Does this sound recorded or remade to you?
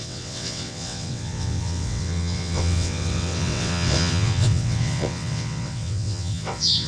remade